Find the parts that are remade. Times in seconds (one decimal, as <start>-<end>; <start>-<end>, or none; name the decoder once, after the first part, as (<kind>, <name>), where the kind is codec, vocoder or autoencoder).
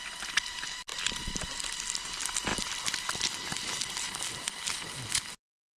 none